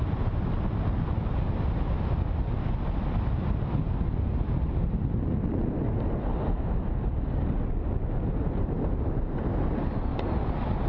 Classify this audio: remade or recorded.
recorded